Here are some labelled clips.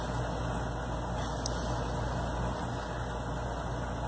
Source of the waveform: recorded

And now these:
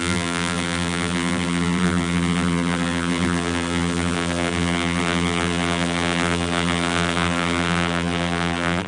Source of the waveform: remade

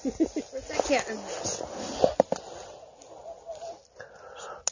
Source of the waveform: recorded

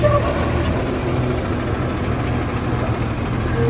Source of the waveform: recorded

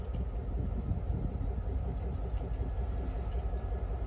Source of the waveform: recorded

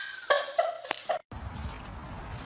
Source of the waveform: recorded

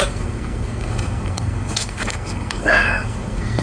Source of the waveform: remade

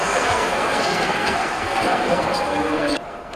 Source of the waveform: remade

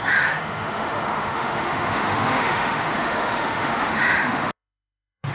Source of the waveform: remade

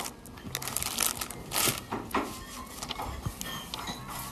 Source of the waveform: recorded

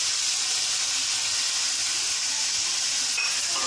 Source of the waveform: recorded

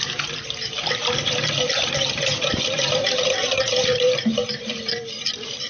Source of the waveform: remade